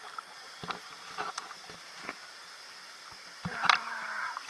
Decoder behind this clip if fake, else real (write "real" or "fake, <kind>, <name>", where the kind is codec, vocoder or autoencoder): fake, vocoder, BigVGAN v2